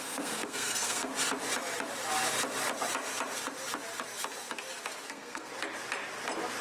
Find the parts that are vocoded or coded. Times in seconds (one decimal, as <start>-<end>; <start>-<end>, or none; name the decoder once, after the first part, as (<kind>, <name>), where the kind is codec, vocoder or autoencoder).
0.0-1.1 (codec, SNAC); 5.1-5.5